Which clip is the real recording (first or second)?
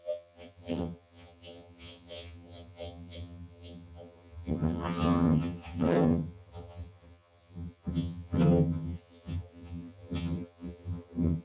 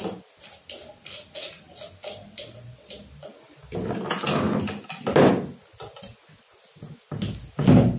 second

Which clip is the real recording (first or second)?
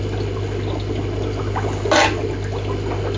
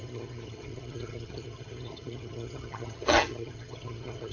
first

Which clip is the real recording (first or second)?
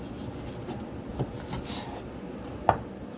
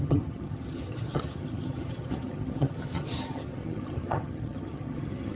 first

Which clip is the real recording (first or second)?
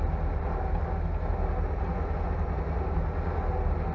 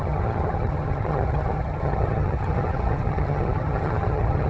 first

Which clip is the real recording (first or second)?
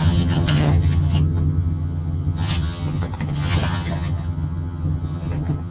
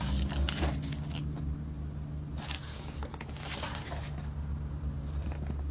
second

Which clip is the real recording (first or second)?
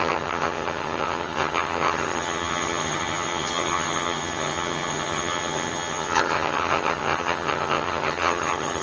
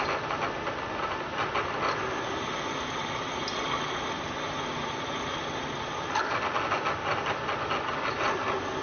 second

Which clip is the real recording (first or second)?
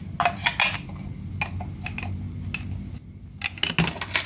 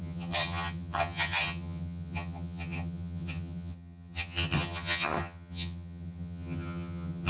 first